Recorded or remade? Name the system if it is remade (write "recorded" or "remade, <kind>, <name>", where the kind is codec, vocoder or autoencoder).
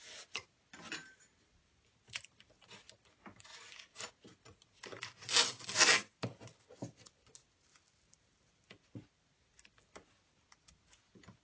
recorded